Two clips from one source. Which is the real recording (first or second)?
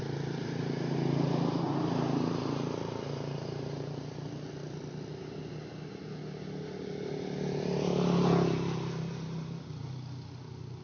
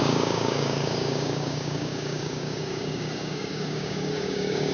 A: first